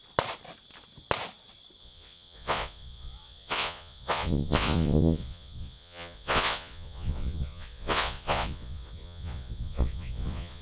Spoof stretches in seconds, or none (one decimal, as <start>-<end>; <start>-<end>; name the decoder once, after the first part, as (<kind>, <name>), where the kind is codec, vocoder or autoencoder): 1.8-10.6 (vocoder, Vocos)